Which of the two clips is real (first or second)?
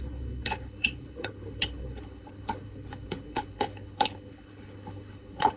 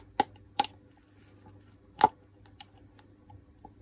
second